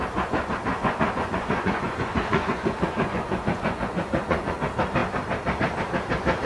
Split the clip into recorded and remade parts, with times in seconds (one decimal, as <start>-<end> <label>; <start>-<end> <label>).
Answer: 0.0-0.7 recorded; 0.7-4.6 remade; 4.6-6.5 recorded